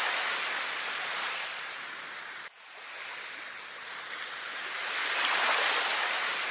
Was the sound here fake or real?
real